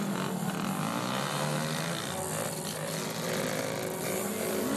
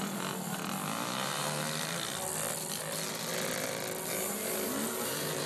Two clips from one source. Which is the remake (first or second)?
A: second